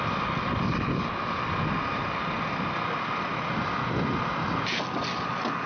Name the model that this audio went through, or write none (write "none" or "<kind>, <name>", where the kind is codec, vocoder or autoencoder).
none